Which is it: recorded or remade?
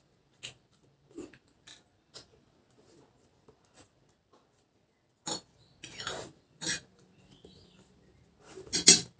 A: recorded